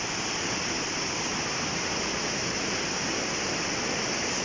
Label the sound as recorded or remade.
recorded